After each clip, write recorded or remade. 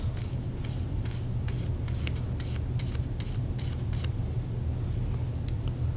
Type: recorded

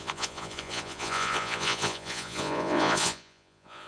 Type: remade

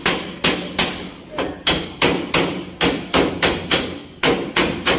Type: recorded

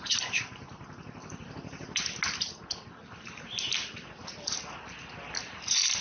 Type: recorded